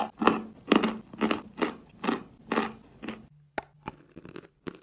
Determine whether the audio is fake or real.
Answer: real